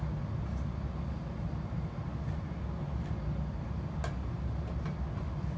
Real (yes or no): yes